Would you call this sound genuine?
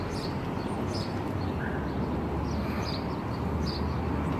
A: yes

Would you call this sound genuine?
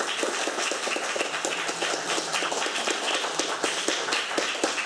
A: yes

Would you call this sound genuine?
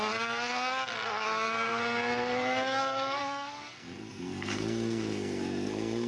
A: no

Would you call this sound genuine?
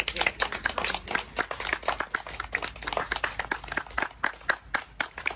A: yes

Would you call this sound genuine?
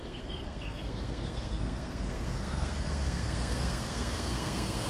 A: no